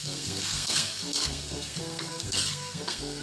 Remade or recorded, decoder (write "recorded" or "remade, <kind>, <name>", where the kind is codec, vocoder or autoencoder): remade, codec, SNAC